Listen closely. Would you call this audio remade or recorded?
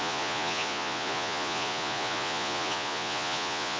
remade